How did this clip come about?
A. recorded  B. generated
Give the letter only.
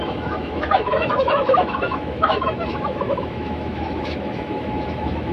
B